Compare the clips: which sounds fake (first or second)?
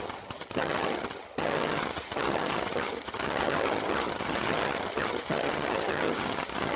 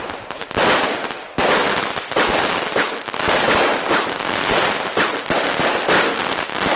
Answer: first